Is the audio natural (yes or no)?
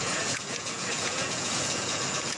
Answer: no